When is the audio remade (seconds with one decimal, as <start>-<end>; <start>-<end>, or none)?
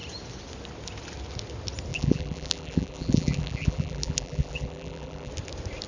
1.9-5.3